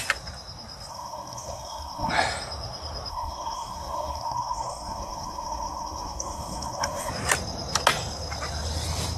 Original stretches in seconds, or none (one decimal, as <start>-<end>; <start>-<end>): 0.0-0.9; 2.1-3.1; 7.1-9.2